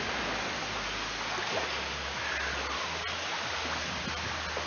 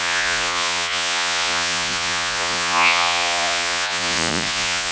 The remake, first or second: second